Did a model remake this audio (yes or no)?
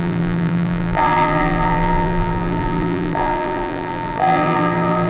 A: yes